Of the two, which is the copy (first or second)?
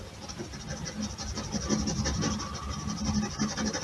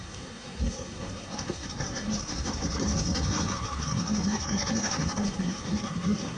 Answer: second